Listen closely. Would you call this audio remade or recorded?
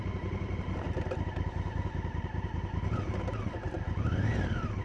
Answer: remade